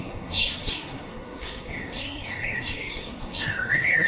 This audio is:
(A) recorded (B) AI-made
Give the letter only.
B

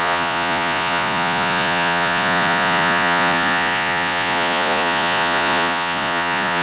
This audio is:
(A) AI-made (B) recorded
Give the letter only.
A